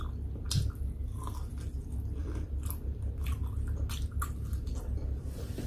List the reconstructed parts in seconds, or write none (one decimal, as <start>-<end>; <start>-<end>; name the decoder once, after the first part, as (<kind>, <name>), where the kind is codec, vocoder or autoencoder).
2.2-2.7 (vocoder, BigVGAN v2)